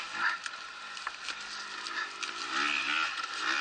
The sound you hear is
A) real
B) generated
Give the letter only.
A